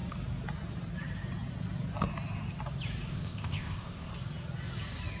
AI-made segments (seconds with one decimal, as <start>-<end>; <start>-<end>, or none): 3.1-4.1